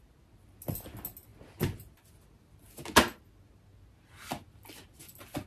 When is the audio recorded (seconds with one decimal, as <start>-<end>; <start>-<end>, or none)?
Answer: 0.0-5.5